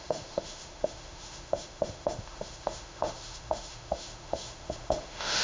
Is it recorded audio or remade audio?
remade